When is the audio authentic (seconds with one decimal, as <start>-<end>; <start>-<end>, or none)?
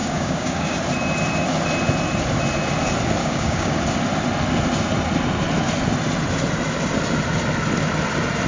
0.8-3.2; 3.8-8.5